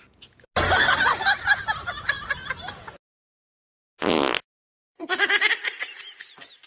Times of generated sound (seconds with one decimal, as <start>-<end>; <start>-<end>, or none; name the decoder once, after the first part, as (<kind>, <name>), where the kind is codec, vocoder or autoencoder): 4.6-5.5 (vocoder, BigVGAN v2)

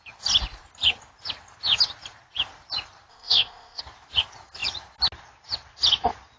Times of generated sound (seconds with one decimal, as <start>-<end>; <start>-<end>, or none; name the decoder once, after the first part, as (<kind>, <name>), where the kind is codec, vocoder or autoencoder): 3.1-3.8 (codec, ZipCodec)

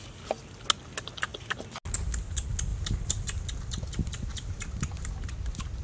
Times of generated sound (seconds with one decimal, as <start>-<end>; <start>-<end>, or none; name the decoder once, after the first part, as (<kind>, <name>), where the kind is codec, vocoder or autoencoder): none